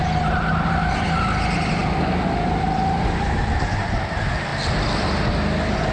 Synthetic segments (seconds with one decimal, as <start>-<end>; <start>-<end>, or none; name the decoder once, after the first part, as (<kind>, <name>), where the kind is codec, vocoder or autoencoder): none